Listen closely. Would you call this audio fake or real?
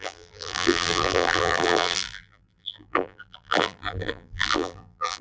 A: fake